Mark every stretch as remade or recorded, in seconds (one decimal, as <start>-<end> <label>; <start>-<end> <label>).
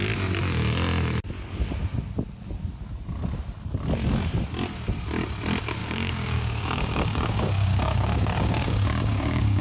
0.0-5.8 recorded; 5.8-9.6 remade